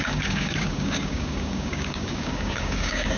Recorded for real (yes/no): no